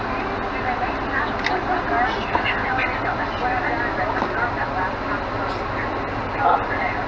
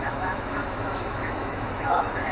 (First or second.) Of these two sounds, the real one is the first